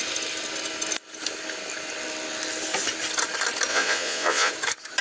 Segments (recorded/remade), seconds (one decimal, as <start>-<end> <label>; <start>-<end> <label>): 0.0-3.7 recorded; 3.7-4.5 remade; 4.5-5.0 recorded